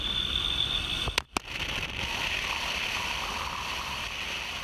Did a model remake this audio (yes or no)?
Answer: no